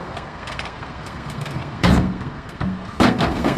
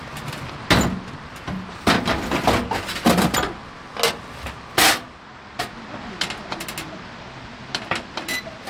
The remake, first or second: first